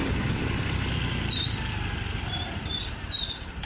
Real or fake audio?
real